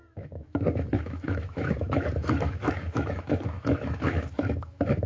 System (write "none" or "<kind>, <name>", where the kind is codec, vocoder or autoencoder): autoencoder, DAC-VAE